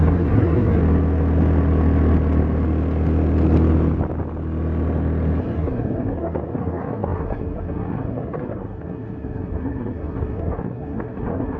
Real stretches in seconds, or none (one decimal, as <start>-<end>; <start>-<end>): 0.8-5.4